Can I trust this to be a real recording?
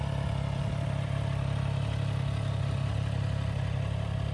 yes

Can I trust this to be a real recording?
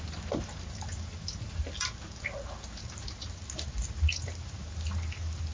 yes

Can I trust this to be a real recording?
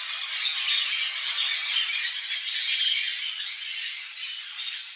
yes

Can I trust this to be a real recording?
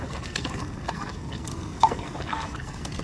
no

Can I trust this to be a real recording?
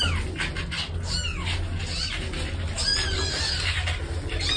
yes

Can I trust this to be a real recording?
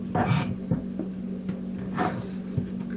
yes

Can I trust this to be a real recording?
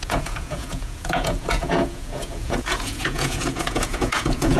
no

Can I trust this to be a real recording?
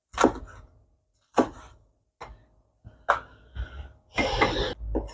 yes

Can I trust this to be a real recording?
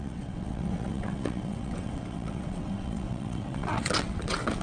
no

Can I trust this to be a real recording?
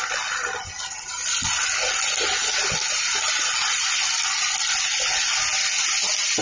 yes